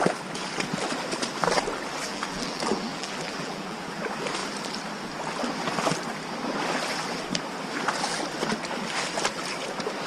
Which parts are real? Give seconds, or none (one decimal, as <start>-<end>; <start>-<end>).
0.0-2.1; 4.0-10.1